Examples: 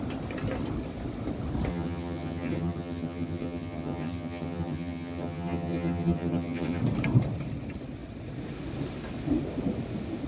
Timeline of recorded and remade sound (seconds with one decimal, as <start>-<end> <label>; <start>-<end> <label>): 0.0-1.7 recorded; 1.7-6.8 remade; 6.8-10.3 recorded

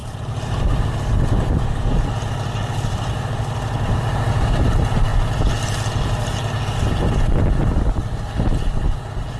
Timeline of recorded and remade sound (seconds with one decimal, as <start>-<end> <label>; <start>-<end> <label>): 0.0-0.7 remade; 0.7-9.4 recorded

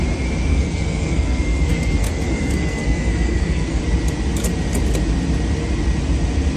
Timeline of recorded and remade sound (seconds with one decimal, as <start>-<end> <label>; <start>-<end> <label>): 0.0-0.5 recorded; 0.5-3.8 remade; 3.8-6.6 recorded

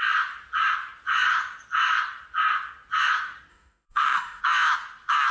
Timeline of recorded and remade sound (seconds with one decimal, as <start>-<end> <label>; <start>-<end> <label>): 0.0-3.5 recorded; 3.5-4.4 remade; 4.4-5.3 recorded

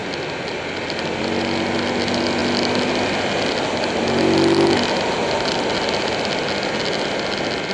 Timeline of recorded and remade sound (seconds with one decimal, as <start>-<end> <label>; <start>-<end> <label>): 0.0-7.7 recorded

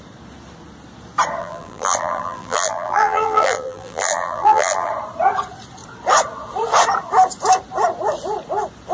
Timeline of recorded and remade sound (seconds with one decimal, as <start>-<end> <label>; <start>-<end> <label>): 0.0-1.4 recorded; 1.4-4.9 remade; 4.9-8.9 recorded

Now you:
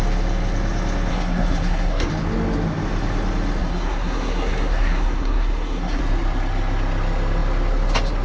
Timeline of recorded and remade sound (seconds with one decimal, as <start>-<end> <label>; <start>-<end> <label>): 0.0-1.1 recorded; 1.1-2.1 remade; 2.1-3.6 recorded; 3.6-6.0 remade; 6.0-8.2 recorded